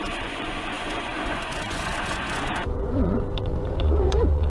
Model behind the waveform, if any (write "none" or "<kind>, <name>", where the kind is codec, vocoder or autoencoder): vocoder, Vocos